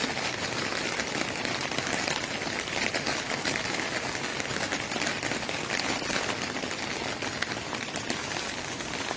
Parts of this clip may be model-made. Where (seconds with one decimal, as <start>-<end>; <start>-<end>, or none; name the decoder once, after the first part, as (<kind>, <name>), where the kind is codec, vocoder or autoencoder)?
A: none